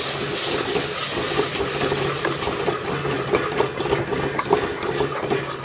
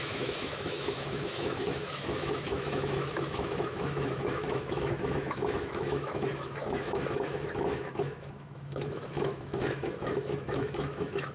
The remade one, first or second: second